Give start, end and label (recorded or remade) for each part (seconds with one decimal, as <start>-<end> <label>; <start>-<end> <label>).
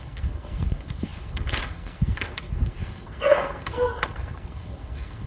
0.0-5.3 remade